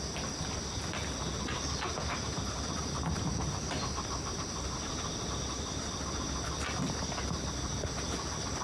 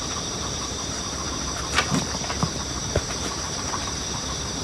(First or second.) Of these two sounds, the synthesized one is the second